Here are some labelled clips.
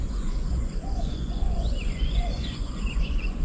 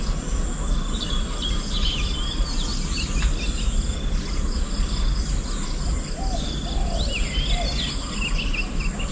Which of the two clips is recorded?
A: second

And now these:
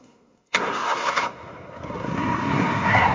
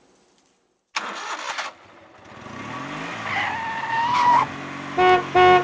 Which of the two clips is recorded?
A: second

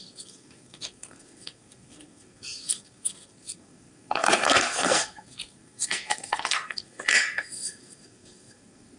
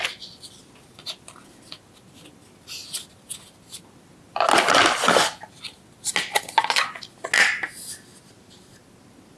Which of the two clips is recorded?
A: second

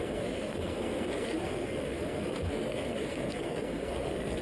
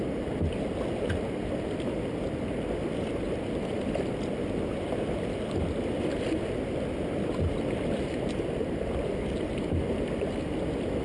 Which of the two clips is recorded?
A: second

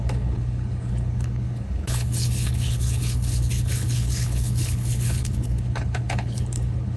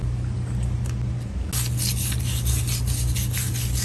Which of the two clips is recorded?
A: second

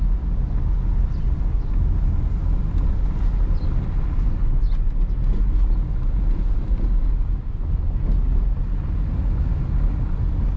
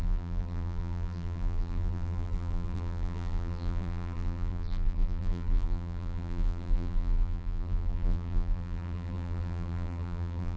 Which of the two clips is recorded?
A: first